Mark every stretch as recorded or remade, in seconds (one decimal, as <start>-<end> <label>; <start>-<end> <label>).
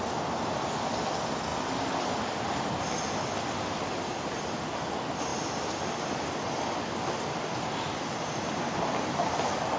0.0-1.5 recorded; 1.5-2.7 remade; 2.7-5.3 recorded; 5.3-8.9 remade; 8.9-9.8 recorded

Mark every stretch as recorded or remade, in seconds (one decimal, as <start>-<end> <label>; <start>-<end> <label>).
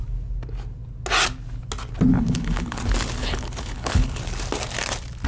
0.0-2.1 recorded; 2.1-2.8 remade; 2.8-3.2 recorded; 3.2-4.2 remade; 4.2-5.3 recorded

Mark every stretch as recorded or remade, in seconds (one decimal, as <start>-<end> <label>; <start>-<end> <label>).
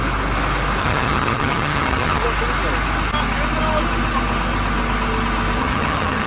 0.0-0.8 recorded; 0.8-2.2 remade; 2.2-5.6 recorded; 5.6-6.3 remade